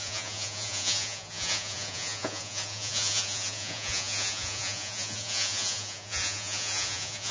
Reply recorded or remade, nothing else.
remade